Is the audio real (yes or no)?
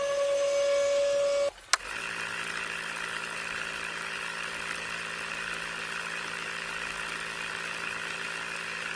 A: yes